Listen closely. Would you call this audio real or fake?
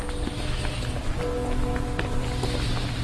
real